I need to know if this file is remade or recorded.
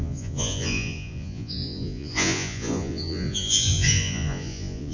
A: remade